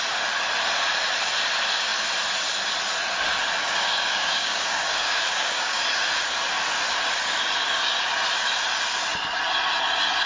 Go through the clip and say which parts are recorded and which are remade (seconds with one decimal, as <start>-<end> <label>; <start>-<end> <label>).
0.0-3.8 recorded; 3.8-5.8 remade; 5.8-10.3 recorded